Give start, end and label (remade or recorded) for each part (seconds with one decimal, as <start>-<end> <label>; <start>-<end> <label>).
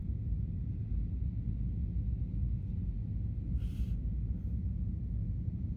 0.0-5.8 recorded